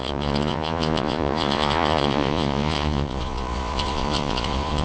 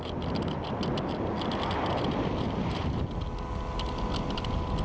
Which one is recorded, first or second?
second